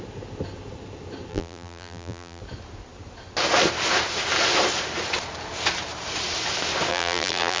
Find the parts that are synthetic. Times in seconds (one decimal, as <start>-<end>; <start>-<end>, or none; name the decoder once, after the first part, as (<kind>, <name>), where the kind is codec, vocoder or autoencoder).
1.3-2.4 (vocoder, BigVGAN v2); 6.9-7.6